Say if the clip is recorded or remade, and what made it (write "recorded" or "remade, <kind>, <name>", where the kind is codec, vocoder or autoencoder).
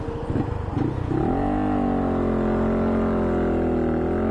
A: recorded